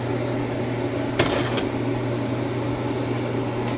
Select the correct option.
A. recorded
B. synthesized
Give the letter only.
A